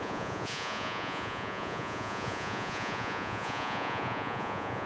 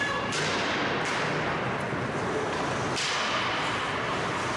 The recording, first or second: second